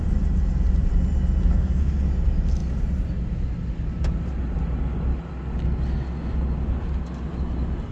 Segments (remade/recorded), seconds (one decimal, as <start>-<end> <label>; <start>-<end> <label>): 0.0-1.5 recorded; 1.5-2.0 remade; 2.0-7.9 recorded